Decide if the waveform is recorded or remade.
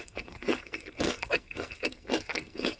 remade